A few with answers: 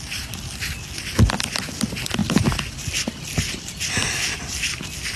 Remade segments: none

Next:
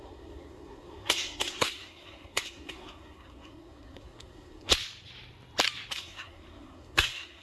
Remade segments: 0.0-4.7 (codec, SNAC); 5.9-7.4